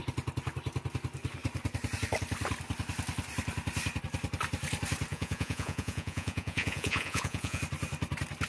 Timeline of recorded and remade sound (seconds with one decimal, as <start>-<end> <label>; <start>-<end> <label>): 0.0-5.1 recorded; 5.1-7.6 remade; 7.6-8.5 recorded